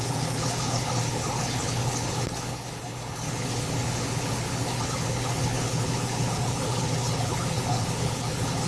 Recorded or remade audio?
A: remade